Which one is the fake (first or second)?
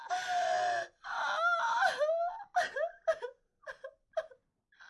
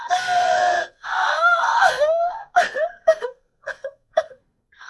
second